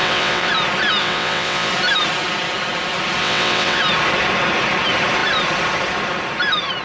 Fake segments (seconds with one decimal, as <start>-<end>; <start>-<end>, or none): 0.0-0.5; 1.0-1.7; 3.2-3.8